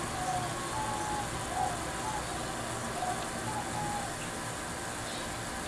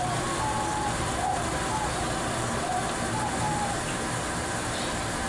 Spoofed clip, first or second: second